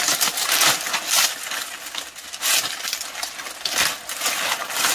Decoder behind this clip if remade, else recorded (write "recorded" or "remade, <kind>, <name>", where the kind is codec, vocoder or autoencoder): recorded